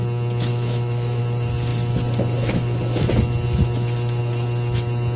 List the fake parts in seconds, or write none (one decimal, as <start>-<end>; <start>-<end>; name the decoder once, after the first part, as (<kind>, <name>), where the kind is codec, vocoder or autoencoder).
0.5-1.2 (autoencoder, DAC-VAE)